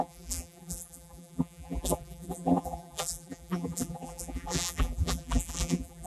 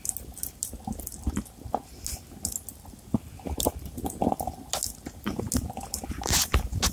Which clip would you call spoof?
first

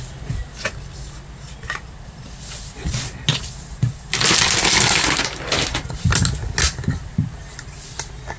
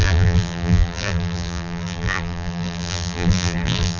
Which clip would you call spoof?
second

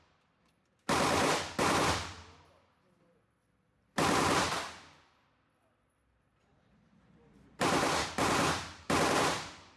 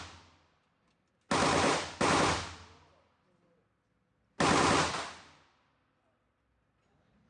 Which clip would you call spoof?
first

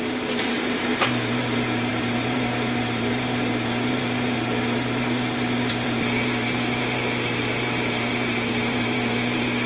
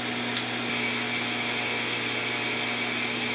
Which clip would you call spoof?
first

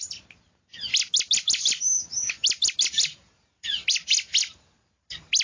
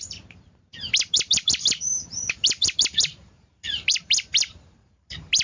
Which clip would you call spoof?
second